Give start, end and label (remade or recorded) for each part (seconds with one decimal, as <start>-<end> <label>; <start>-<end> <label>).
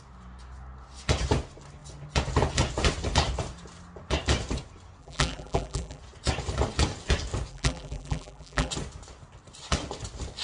0.0-5.0 recorded; 5.0-6.0 remade; 6.0-7.5 recorded; 7.5-8.7 remade; 8.7-10.4 recorded